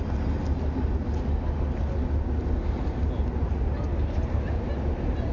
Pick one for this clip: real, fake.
real